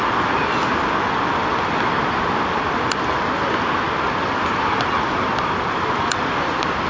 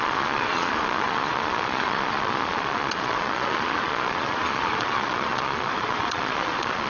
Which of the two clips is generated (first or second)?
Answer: second